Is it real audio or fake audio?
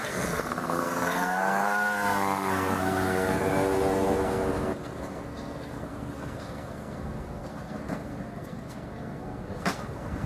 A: fake